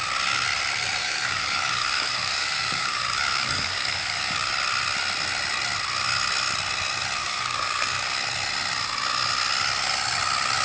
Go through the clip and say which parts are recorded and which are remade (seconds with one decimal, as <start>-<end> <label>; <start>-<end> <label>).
0.0-1.0 recorded; 1.0-4.5 remade; 4.5-7.2 recorded; 7.2-8.2 remade; 8.2-10.6 recorded